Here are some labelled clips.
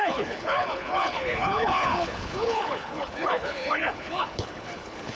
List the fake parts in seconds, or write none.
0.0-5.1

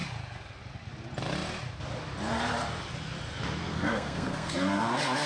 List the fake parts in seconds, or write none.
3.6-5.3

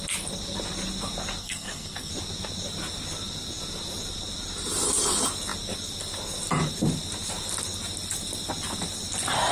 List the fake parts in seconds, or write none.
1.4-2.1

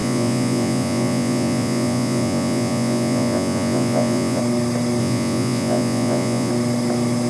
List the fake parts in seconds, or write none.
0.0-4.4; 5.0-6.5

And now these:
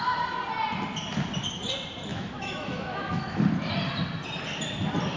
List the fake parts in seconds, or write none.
2.1-3.4